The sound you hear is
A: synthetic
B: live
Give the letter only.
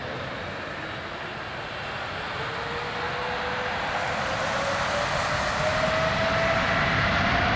B